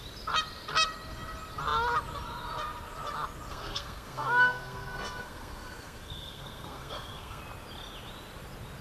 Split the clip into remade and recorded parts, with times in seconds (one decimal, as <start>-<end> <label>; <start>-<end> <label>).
0.0-3.5 recorded; 3.5-7.4 remade; 7.4-8.8 recorded